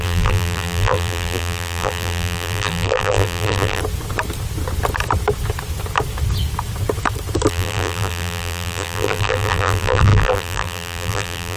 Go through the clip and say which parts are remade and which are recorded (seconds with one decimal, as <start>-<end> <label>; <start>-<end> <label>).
0.0-3.8 remade; 3.8-7.5 recorded; 7.5-11.6 remade